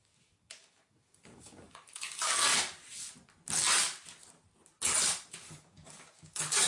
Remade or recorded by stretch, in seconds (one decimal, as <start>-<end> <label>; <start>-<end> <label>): 0.0-2.5 remade; 2.5-5.3 recorded; 5.3-6.7 remade